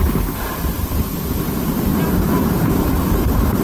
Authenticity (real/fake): real